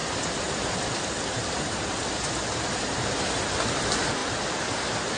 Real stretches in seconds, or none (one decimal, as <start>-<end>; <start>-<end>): 0.0-5.2